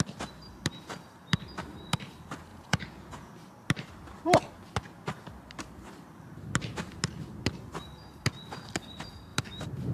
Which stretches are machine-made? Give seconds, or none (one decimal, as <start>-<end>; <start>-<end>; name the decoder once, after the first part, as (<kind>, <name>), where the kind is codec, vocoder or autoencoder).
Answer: 2.5-3.3 (vocoder, Vocos)